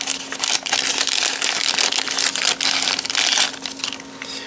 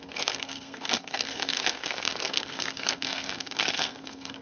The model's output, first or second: second